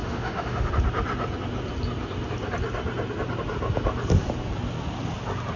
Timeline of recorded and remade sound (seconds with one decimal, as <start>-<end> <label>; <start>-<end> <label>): 0.0-0.7 remade; 0.7-5.6 recorded

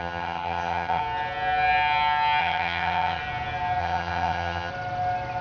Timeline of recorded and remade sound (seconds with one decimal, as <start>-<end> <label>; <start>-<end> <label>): 0.0-1.0 remade; 1.0-2.4 recorded; 2.4-3.2 remade; 3.2-3.8 recorded; 3.8-4.7 remade; 4.7-5.4 recorded

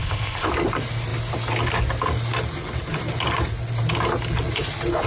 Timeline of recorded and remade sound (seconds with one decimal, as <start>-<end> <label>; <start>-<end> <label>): 0.0-0.5 remade; 0.5-5.1 recorded

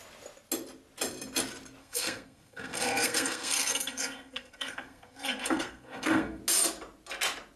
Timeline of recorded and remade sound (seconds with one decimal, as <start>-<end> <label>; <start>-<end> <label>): 0.0-1.8 recorded; 1.8-6.4 remade; 6.4-7.6 recorded

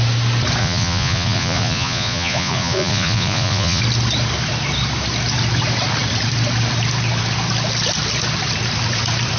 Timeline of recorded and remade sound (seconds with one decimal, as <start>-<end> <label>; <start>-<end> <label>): 0.0-0.6 recorded; 0.6-3.8 remade; 3.8-9.4 recorded